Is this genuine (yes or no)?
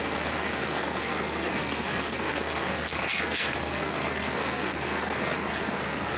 no